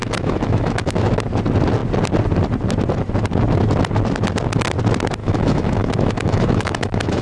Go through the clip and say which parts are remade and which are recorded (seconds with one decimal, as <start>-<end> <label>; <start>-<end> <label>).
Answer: 0.0-1.1 remade; 1.1-5.2 recorded; 5.2-7.2 remade